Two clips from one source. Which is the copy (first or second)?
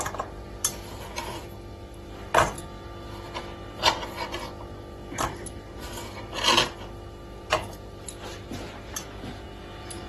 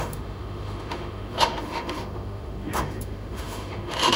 second